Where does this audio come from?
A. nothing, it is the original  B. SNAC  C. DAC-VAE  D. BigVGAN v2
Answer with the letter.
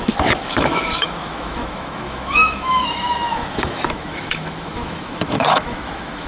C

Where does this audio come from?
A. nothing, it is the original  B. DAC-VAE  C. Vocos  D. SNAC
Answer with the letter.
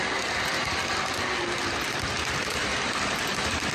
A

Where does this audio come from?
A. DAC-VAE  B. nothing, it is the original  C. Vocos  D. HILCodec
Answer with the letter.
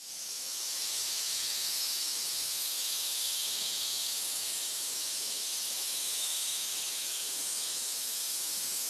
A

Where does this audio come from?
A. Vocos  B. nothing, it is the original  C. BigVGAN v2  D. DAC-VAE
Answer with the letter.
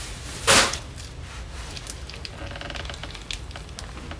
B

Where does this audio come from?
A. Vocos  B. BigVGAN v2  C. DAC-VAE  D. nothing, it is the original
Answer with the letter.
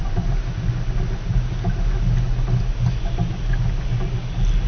D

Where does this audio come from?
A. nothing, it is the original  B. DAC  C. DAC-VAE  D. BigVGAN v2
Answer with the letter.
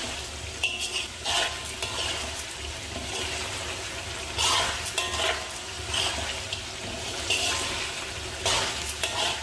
A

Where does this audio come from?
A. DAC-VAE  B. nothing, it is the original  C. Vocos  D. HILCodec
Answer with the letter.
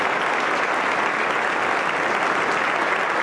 B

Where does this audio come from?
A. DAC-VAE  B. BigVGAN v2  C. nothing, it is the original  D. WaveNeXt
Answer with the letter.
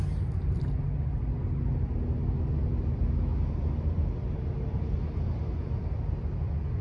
C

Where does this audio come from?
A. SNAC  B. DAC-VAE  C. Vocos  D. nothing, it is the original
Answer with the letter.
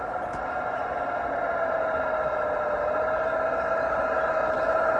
D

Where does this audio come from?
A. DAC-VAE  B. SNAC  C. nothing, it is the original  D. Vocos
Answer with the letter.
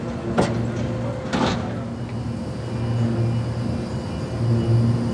C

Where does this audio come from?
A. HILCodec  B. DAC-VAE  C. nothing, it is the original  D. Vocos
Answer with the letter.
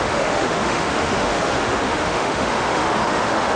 B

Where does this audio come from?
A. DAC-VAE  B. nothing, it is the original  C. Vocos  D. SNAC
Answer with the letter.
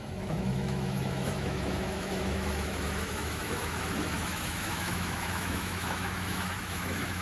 A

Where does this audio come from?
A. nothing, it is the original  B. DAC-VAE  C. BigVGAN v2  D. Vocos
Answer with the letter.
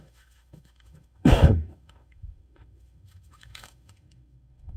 B